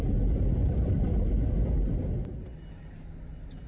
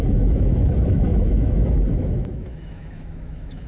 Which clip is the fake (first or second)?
second